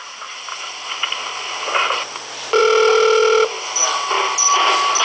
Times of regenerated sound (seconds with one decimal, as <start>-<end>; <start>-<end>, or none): none